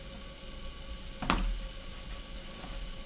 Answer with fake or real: real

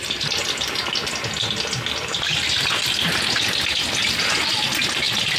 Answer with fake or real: real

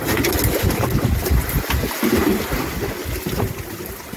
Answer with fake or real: real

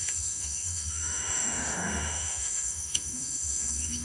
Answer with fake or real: fake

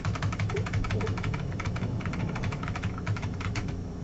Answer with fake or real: fake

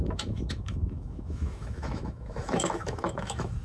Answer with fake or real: fake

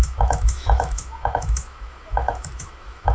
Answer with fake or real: fake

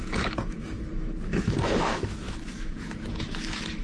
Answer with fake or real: fake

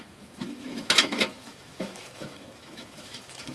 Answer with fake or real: fake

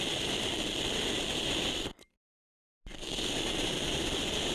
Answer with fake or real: real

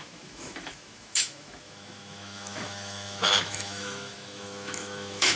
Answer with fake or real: fake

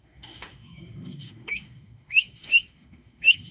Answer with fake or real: fake